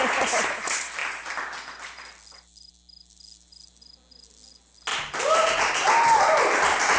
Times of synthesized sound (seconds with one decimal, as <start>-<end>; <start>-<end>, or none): none